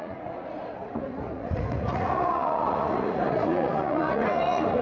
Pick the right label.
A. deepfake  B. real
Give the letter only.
A